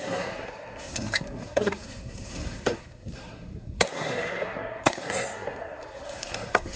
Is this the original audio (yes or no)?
no